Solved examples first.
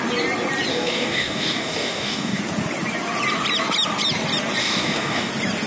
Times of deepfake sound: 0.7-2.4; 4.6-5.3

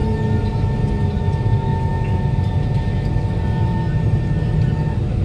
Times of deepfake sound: none

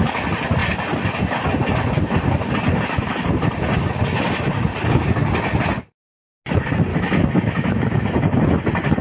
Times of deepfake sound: 6.9-8.0

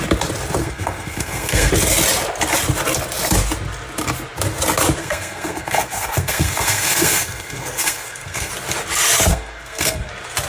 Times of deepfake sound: 0.6-1.7; 5.0-8.5; 9.3-10.1